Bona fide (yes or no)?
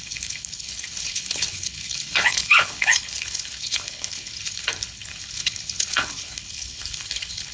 no